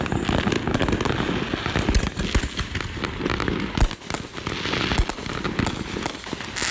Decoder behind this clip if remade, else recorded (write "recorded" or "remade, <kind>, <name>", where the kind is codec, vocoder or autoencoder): recorded